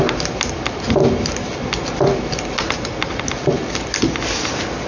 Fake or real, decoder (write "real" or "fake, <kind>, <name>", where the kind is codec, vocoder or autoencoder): real